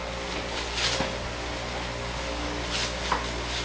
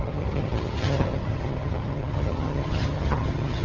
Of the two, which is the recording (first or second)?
first